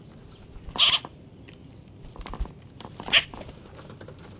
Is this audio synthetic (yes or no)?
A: no